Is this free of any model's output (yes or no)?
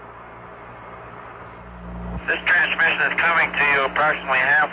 yes